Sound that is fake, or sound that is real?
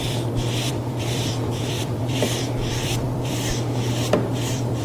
fake